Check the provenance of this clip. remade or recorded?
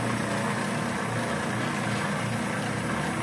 recorded